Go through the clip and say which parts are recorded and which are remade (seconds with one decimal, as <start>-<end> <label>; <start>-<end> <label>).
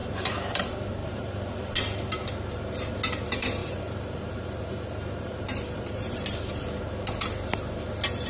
0.0-0.6 remade; 0.6-1.0 recorded; 1.0-1.7 remade; 1.7-3.6 recorded; 3.6-6.1 remade; 6.1-8.3 recorded